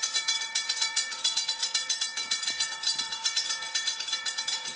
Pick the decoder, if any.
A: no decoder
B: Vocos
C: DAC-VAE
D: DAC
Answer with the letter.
B